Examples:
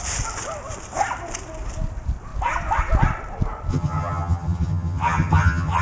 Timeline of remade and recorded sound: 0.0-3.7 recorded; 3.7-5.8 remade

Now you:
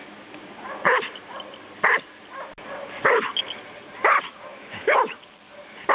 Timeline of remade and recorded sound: 0.0-4.5 recorded; 4.5-5.1 remade; 5.1-5.9 recorded

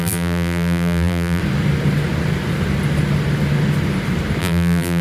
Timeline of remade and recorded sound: 0.0-1.4 remade; 1.4-4.4 recorded; 4.4-5.0 remade

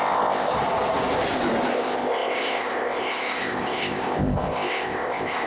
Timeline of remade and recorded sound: 0.0-0.5 remade; 0.5-1.7 recorded; 1.7-5.5 remade